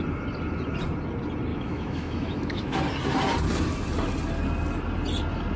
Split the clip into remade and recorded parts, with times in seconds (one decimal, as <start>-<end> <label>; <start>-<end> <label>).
0.0-1.5 recorded; 1.5-2.8 remade; 2.8-5.6 recorded